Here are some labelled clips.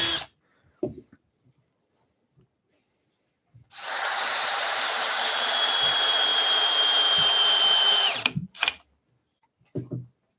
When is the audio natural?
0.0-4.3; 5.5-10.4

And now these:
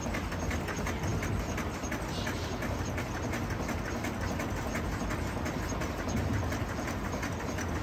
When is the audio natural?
0.0-7.8